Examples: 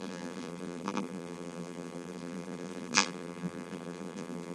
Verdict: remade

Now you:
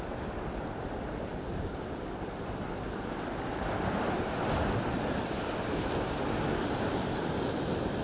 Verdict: recorded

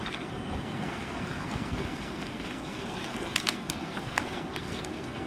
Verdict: remade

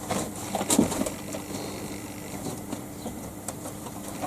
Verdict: remade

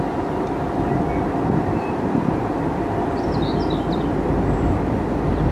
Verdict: recorded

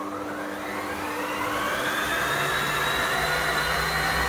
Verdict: recorded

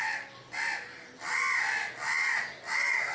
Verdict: recorded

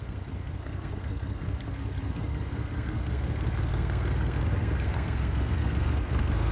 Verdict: remade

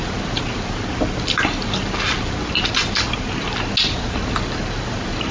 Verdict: recorded